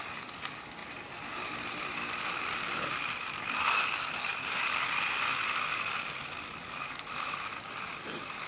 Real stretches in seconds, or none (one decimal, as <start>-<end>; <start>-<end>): 0.0-0.8; 3.7-8.5